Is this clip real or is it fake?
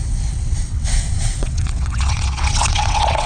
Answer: fake